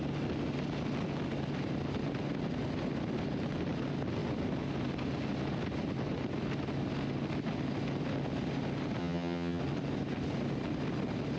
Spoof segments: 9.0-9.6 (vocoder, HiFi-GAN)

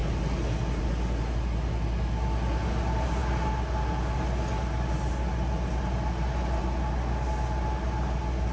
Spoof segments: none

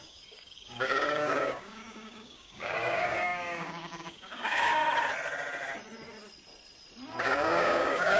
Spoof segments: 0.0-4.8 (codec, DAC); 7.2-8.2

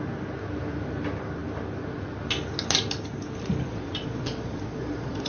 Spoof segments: 3.7-5.3 (vocoder, Vocos)

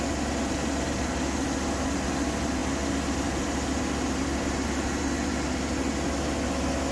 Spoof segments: none